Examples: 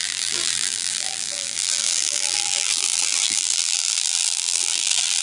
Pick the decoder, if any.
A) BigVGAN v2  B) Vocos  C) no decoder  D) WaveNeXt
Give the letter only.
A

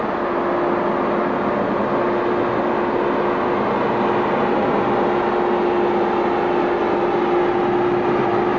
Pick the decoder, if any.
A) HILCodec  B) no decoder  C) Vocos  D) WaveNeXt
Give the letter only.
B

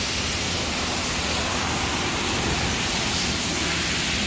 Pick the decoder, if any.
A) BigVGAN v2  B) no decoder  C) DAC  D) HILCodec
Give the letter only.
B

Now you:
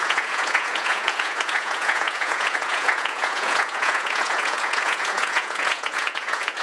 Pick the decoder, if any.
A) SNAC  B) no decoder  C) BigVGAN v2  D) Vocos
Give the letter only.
D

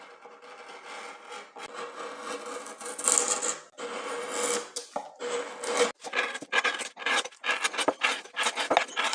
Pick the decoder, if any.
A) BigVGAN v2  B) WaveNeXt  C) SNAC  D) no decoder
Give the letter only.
D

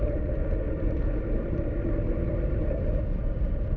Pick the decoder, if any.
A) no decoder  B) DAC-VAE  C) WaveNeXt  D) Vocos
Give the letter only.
A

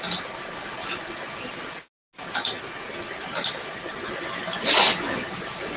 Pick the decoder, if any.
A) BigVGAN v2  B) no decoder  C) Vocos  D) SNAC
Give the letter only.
B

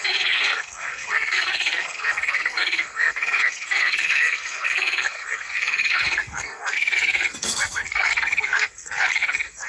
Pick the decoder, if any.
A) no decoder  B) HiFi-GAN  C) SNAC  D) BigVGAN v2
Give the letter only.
C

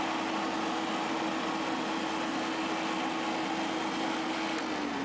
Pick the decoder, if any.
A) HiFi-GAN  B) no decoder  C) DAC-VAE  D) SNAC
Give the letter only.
B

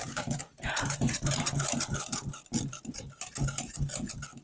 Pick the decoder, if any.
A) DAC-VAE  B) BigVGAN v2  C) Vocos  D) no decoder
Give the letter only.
B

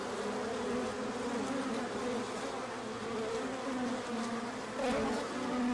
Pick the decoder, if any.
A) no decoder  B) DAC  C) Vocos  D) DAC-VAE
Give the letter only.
A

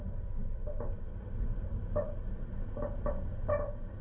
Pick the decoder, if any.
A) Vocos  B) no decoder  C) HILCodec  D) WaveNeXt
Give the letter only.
B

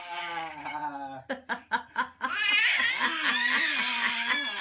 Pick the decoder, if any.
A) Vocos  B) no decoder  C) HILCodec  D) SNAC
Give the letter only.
B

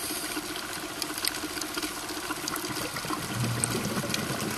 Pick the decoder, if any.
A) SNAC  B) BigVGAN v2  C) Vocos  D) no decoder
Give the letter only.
D